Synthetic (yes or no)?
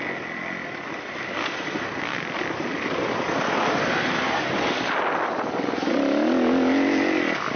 no